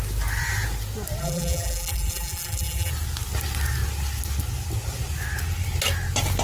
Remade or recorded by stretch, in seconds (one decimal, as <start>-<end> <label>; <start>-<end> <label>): 0.0-1.2 recorded; 1.2-2.9 remade; 2.9-6.4 recorded